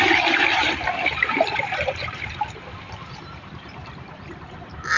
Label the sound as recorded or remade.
remade